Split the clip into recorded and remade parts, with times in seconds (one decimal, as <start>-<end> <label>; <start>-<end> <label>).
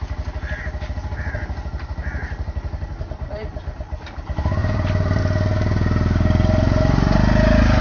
0.0-4.6 recorded; 4.6-5.2 remade; 5.2-7.8 recorded